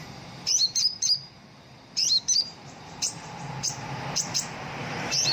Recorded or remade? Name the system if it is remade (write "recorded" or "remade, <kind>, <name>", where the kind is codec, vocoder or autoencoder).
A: remade, vocoder, BigVGAN v2